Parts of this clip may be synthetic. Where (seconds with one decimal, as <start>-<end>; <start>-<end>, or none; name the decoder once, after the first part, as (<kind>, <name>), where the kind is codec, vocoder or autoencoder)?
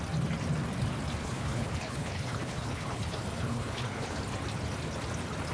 1.2-4.2 (codec, HILCodec)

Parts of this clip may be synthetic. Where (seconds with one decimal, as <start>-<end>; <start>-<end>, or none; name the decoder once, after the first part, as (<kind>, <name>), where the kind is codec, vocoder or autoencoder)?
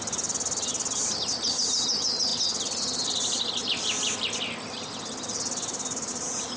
none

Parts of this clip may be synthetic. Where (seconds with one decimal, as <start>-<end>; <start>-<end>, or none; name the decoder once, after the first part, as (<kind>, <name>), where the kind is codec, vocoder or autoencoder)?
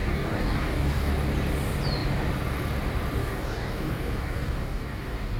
0.0-1.1 (codec, DAC); 3.2-5.4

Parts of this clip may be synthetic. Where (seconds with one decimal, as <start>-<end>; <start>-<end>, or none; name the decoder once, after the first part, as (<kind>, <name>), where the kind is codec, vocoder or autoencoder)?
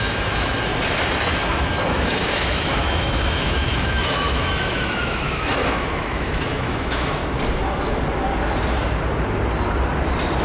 0.0-0.7 (autoencoder, DAC-VAE); 1.9-7.2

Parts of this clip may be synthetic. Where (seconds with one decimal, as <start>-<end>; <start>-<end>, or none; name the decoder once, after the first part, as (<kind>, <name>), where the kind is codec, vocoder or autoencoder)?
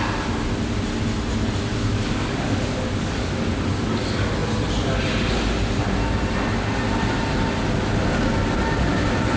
1.7-3.5 (codec, DAC)